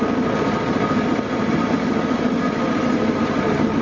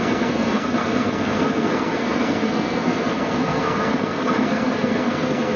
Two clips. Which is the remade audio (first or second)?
second